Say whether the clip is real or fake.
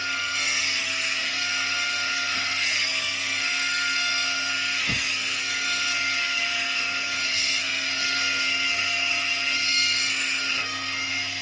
fake